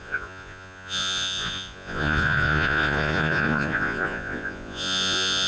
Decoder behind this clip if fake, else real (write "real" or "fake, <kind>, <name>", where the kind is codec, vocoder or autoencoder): fake, vocoder, Vocos